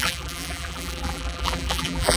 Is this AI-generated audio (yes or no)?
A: yes